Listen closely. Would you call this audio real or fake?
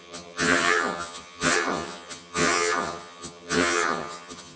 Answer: fake